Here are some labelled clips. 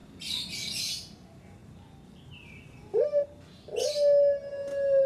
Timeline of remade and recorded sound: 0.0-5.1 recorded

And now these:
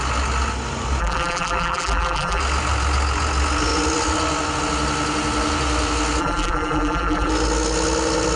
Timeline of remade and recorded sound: 0.0-1.0 recorded; 1.0-2.4 remade; 2.4-6.2 recorded; 6.2-7.3 remade; 7.3-8.4 recorded

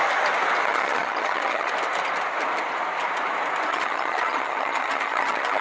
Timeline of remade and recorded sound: 0.0-0.6 recorded; 0.6-1.7 remade; 1.7-3.7 recorded; 3.7-5.6 remade

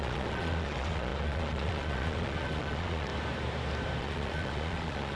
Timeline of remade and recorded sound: 0.0-3.1 remade; 3.1-4.0 recorded; 4.0-5.2 remade

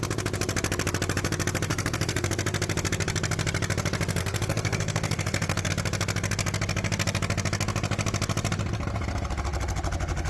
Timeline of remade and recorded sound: 0.0-1.7 recorded; 1.7-2.3 remade; 2.3-4.2 recorded; 4.2-5.7 remade; 5.7-10.3 recorded